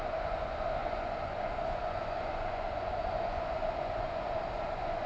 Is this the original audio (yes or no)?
no